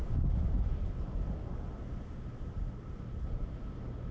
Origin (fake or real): real